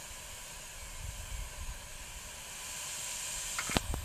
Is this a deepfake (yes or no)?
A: no